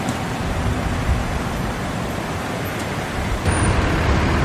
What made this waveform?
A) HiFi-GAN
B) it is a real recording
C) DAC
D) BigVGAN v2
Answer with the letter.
B